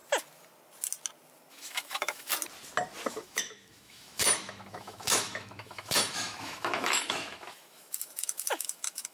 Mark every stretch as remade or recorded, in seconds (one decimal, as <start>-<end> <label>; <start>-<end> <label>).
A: 0.0-1.5 recorded; 1.5-2.3 remade; 2.3-3.1 recorded; 3.1-9.1 remade